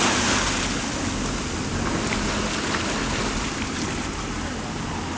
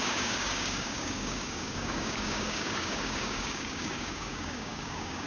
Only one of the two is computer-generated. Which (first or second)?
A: second